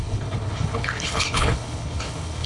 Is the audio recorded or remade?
remade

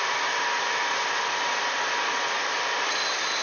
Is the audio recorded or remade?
recorded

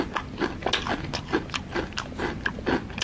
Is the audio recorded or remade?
recorded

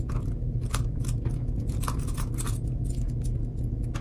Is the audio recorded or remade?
recorded